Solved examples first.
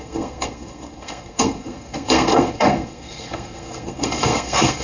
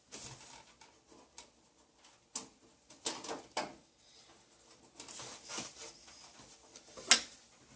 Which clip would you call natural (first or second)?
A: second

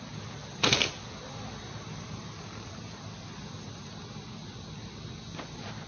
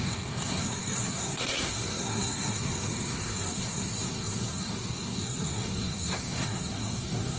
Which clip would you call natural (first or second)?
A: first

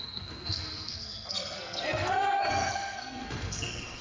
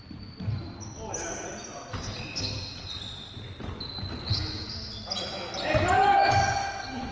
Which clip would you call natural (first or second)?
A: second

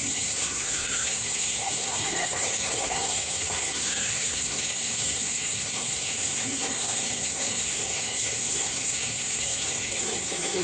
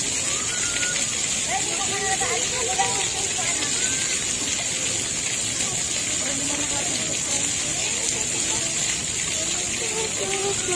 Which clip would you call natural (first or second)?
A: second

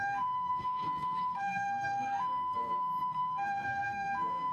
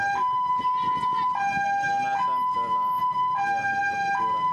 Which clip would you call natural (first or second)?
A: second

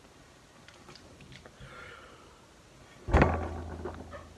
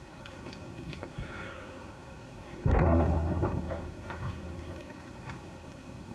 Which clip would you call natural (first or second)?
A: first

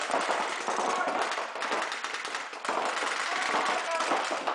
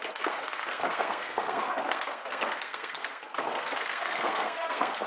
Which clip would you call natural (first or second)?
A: first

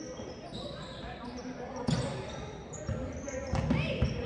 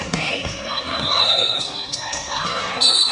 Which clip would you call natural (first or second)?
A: first